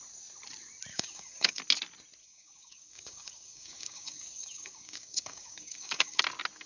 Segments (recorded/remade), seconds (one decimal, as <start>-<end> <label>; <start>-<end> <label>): 0.0-0.9 recorded; 0.9-1.6 remade; 1.6-2.2 recorded; 2.2-6.2 remade; 6.2-6.7 recorded